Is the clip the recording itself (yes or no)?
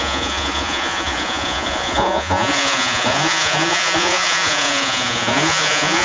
no